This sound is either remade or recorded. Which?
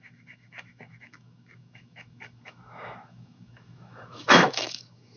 remade